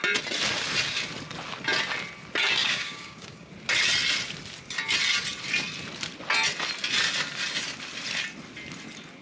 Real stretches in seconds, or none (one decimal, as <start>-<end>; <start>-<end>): 0.0-2.6; 3.5-9.2